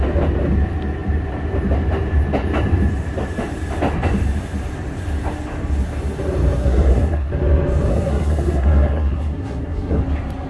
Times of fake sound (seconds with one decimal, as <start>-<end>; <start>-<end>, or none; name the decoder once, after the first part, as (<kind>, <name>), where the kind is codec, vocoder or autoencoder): 6.6-7.3 (codec, SNAC); 7.9-10.0